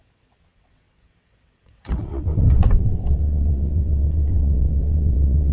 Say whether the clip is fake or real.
fake